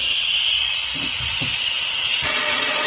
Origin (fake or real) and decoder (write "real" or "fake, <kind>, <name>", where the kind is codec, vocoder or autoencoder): fake, vocoder, Vocos